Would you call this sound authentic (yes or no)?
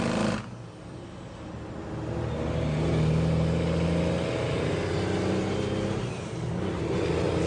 yes